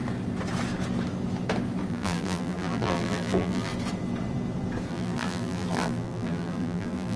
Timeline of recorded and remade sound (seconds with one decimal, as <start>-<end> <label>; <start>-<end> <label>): 0.0-1.9 recorded; 1.9-3.7 remade; 3.7-4.9 recorded; 4.9-7.2 remade